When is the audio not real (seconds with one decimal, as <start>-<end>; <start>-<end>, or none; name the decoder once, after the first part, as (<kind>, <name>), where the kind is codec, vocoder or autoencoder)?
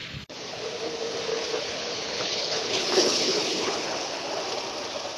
0.0-0.6 (codec, HILCodec); 1.3-4.3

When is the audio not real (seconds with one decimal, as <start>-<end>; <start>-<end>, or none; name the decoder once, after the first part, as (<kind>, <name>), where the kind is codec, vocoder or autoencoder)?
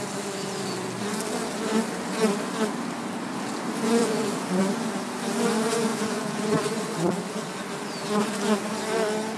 4.0-4.6 (vocoder, Vocos); 5.9-7.1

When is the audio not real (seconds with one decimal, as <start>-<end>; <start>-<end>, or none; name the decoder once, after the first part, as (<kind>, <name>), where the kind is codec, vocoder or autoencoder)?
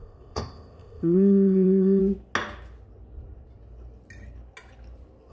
0.0-2.0 (codec, ZipCodec)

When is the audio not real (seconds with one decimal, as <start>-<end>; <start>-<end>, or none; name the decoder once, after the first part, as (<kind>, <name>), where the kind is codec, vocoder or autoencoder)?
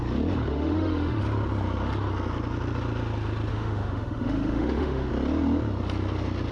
0.5-1.2 (autoencoder, DAC-VAE); 3.5-5.1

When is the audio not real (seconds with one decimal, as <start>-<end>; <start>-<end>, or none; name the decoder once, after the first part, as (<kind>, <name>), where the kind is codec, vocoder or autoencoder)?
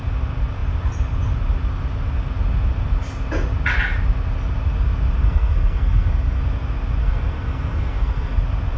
5.2-6.4 (codec, SNAC); 7.0-8.4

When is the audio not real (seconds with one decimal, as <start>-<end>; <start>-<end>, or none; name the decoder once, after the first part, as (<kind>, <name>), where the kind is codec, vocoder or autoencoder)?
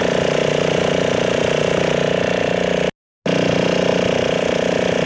3.9-4.4 (vocoder, BigVGAN v2)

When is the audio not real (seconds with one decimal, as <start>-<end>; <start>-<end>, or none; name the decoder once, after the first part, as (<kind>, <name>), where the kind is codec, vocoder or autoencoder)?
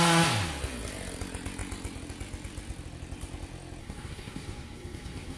3.8-5.4 (codec, SNAC)